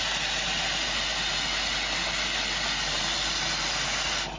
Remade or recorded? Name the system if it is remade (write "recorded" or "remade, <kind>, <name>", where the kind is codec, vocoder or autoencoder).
recorded